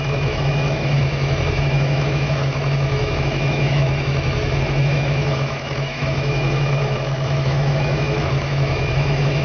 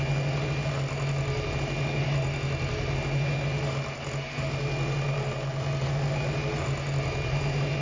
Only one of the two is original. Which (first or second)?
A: second